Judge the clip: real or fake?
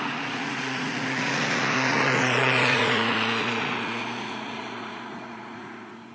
fake